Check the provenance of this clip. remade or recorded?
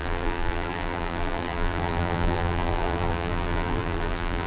remade